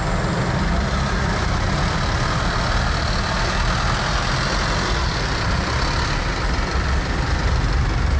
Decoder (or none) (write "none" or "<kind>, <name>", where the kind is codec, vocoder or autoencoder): none